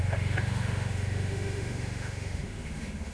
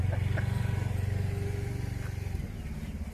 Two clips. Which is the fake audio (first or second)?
first